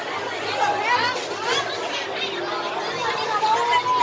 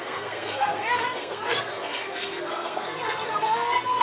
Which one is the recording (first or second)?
first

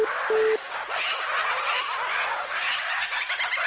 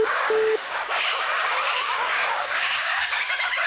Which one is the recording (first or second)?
first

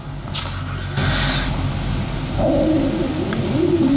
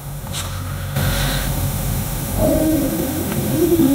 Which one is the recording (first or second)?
first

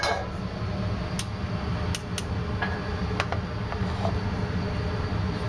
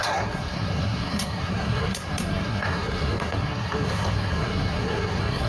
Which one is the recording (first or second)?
first